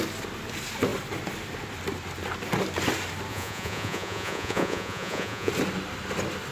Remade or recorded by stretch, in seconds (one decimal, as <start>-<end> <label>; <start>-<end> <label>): 0.0-3.3 recorded; 3.3-5.5 remade; 5.5-6.5 recorded